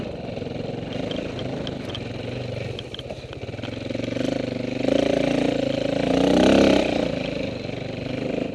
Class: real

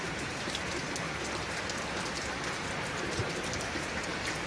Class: fake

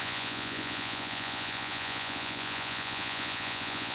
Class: fake